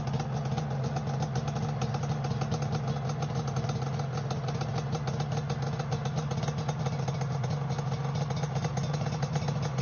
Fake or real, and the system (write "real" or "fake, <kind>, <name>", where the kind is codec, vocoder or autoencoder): real